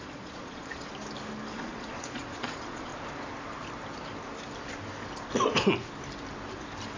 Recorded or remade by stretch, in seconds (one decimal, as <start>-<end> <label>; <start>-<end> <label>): 0.0-0.9 remade; 0.9-1.5 recorded; 1.5-2.9 remade; 2.9-7.0 recorded